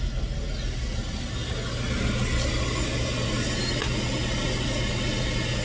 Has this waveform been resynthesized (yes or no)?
no